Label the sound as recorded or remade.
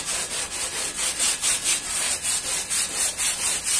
recorded